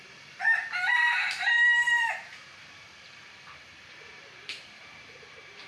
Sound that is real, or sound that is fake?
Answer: fake